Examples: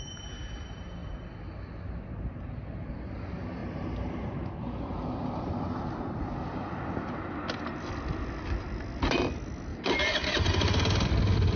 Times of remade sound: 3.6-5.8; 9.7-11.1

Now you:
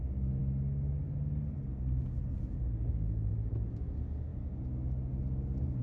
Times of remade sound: none

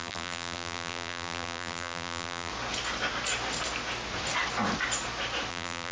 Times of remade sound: 0.0-2.5; 5.5-5.9

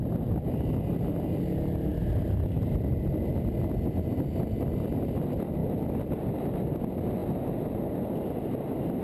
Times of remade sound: 1.9-2.8; 5.6-6.8